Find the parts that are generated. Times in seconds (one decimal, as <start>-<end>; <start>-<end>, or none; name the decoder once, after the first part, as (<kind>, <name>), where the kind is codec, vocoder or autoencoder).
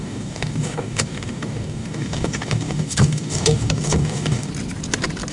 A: 0.0-4.5 (codec, DAC)